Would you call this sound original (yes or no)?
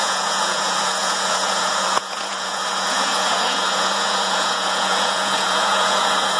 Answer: no